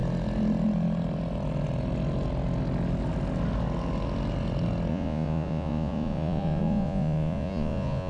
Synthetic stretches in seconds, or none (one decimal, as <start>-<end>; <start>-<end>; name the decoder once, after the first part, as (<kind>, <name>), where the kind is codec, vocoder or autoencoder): 4.9-8.1 (vocoder, Vocos)